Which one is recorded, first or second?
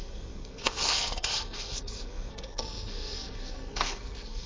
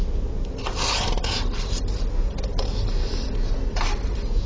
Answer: second